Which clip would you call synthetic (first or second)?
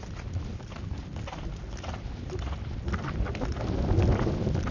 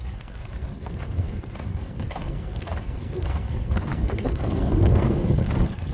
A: second